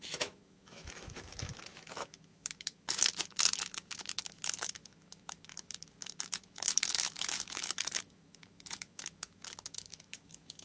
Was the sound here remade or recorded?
remade